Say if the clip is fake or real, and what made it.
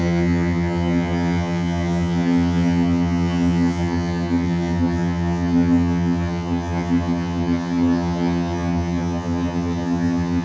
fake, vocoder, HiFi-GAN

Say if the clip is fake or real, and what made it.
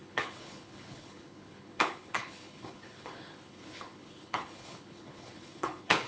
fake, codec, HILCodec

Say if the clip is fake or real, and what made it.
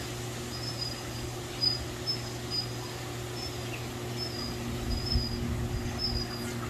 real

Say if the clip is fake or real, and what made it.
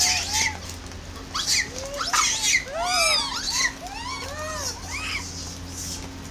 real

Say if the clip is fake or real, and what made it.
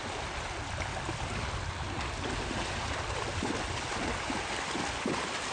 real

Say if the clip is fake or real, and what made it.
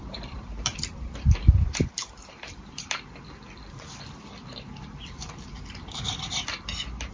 fake, vocoder, BigVGAN v2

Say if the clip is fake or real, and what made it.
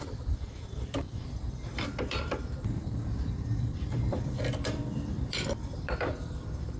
fake, vocoder, BigVGAN v2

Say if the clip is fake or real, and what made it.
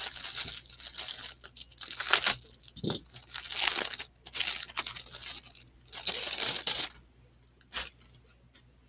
real